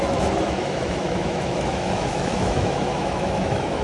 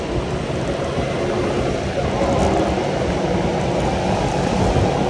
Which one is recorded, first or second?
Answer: second